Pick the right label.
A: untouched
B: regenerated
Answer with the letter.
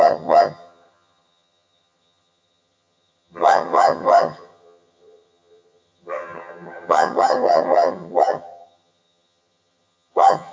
B